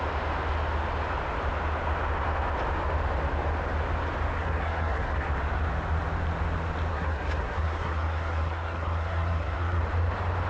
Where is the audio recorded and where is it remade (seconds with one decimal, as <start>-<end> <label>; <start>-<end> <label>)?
0.0-4.4 recorded; 4.4-5.3 remade; 5.3-6.9 recorded; 6.9-9.8 remade; 9.8-10.5 recorded